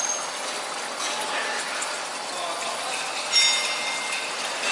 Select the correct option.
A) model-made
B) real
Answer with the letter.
B